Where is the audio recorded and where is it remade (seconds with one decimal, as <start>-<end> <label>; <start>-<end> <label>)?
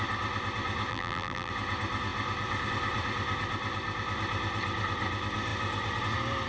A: 0.0-0.9 recorded; 0.9-1.5 remade; 1.5-6.5 recorded